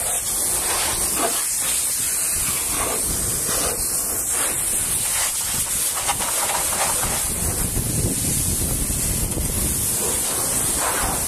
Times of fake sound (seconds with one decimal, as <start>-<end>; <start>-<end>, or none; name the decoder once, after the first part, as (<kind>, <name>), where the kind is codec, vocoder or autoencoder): none